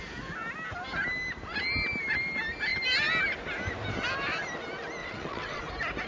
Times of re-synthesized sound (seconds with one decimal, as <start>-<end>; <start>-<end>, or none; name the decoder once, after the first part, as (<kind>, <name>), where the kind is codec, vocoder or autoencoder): 5.0-5.6 (vocoder, WaveNeXt)